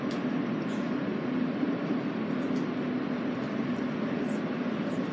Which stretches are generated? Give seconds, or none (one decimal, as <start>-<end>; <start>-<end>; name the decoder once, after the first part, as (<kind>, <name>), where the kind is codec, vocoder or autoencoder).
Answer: none